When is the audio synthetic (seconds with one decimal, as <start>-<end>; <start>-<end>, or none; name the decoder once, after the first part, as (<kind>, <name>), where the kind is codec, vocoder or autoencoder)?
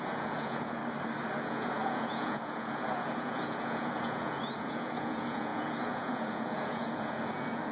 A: 0.0-0.8 (vocoder, Vocos); 1.4-7.7